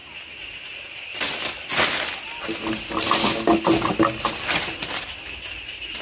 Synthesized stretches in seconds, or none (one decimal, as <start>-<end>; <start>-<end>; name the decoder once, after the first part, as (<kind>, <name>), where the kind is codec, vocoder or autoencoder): none